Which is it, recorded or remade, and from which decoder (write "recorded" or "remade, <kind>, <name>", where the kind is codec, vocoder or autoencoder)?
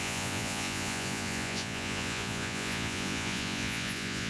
remade, vocoder, Vocos